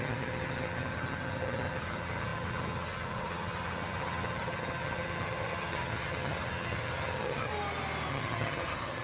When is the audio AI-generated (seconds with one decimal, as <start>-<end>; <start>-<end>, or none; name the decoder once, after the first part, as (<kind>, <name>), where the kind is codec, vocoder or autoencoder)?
0.0-7.5 (vocoder, HiFi-GAN); 8.1-9.0